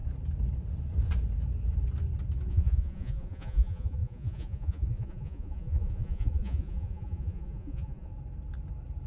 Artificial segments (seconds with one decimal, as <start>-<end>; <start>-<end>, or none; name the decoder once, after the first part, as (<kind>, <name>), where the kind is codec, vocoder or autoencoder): 2.5-8.1 (vocoder, Vocos)